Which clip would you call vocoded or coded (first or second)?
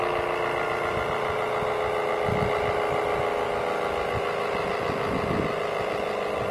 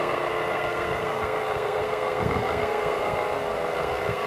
second